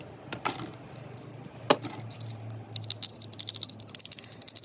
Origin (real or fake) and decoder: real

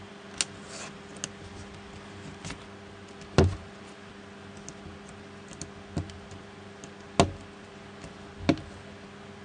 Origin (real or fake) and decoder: real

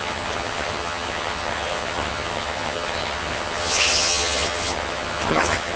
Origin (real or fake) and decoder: fake, vocoder, HiFi-GAN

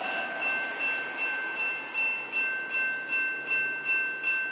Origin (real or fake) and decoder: real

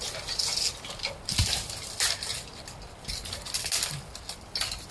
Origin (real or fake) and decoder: real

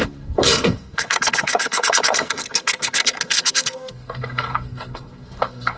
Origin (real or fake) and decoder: fake, codec, SNAC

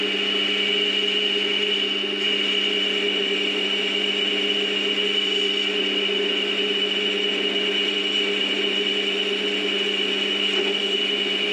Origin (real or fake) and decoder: real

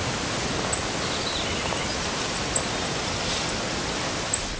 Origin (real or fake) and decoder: real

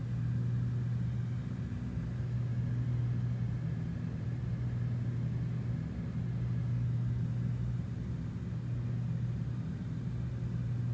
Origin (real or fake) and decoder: real